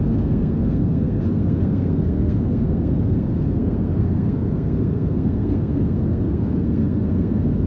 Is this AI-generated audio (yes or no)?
yes